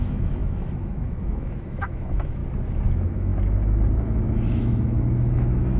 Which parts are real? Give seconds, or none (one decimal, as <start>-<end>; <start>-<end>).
2.4-2.9; 3.3-4.0